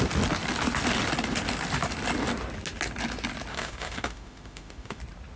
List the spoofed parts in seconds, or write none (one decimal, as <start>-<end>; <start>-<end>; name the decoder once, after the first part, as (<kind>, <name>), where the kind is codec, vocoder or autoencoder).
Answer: 3.5-5.0 (autoencoder, DAC-VAE)